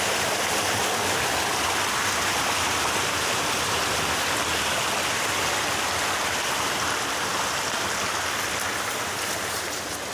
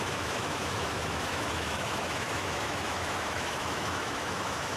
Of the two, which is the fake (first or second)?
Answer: second